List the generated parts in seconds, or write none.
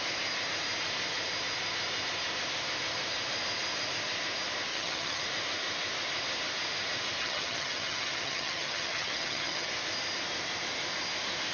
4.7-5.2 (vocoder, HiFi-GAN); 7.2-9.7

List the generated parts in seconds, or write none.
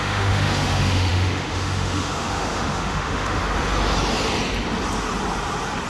0.0-3.4 (autoencoder, DAC-VAE)